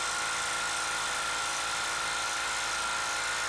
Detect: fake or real real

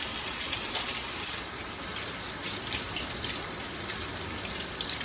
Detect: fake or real real